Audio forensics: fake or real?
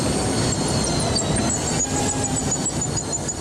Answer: real